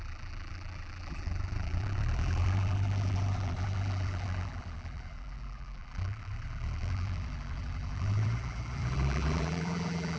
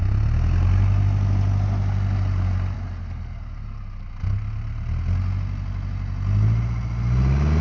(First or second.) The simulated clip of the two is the first